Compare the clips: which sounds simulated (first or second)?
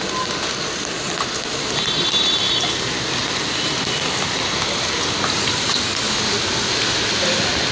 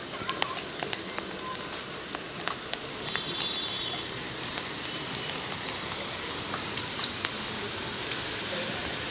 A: second